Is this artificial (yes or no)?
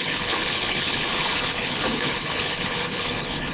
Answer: yes